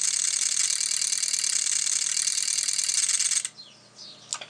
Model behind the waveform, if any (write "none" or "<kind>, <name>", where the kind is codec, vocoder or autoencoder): none